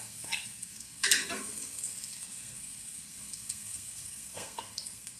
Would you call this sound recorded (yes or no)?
no